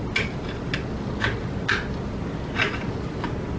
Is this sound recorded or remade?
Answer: recorded